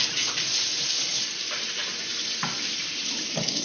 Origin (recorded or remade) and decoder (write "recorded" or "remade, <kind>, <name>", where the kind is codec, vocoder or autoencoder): recorded